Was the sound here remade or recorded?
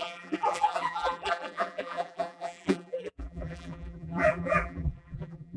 remade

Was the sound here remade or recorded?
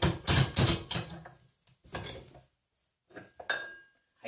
recorded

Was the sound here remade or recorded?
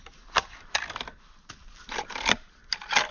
remade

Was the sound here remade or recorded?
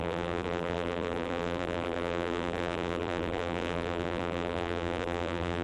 remade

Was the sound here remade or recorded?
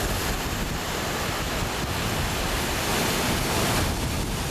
recorded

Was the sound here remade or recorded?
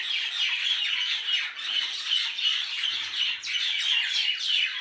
recorded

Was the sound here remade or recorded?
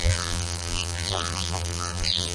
remade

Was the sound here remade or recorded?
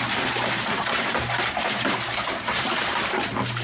remade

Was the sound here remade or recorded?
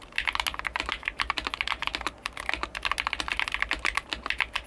recorded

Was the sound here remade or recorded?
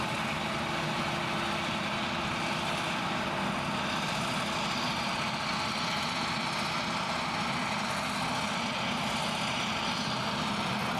recorded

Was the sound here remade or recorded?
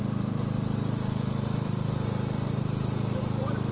remade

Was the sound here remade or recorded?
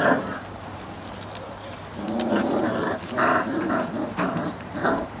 remade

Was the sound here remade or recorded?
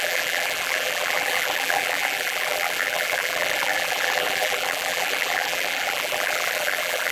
remade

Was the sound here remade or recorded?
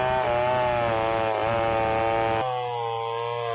recorded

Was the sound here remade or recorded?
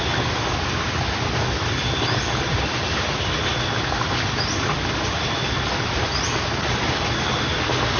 recorded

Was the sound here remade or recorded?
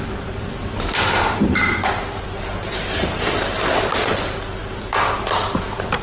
remade